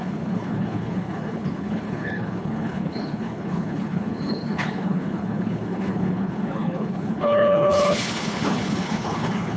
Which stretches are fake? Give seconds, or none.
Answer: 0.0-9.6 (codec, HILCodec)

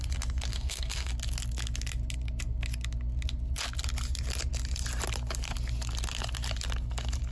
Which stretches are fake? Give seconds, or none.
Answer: 0.5-1.1 (codec, SNAC)

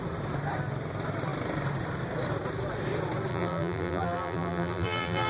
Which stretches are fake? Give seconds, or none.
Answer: 3.3-5.3 (vocoder, BigVGAN v2)

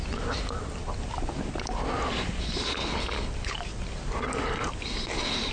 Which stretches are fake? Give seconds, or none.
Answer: none

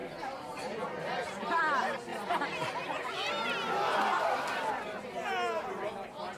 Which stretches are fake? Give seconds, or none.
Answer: 0.0-1.6 (vocoder, BigVGAN v2)

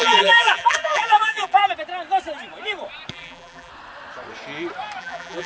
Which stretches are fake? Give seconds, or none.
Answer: 0.0-1.6 (vocoder, BigVGAN v2); 3.1-3.7; 5.0-5.5

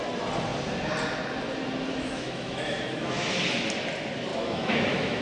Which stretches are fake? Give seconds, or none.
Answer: 1.9-3.4 (autoencoder, DAC-VAE); 4.3-5.2